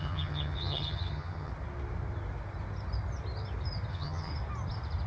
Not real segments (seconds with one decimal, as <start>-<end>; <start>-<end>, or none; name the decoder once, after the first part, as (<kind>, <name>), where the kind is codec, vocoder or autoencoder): 0.0-1.5 (vocoder, HiFi-GAN); 3.9-4.3